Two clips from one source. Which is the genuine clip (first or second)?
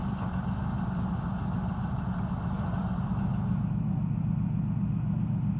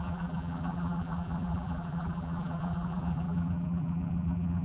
first